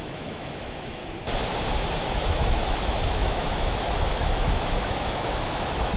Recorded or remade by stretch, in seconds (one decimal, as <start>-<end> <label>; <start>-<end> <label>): 0.0-1.0 remade; 1.0-2.1 recorded; 2.1-6.0 remade